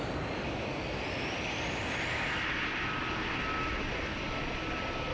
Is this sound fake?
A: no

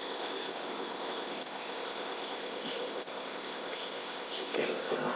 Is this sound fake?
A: yes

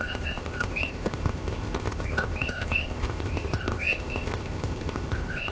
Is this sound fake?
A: yes